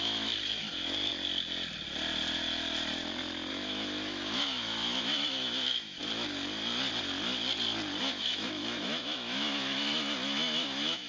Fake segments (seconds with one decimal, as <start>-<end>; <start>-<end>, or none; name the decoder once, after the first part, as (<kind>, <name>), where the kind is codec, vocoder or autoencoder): 0.0-1.1 (autoencoder, DAC-VAE); 3.5-6.0; 8.0-11.1